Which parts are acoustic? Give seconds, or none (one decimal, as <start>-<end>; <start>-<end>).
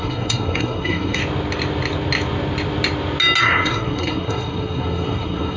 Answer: 1.2-3.4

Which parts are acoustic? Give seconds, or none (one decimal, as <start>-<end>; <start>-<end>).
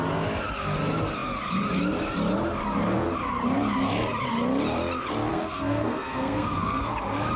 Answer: 0.0-5.3; 6.9-7.4